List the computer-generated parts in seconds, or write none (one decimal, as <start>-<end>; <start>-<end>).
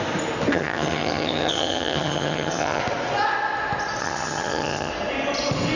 0.5-2.8; 4.0-4.9